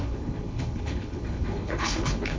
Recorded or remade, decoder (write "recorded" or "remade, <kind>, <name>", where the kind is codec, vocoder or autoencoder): remade, codec, HILCodec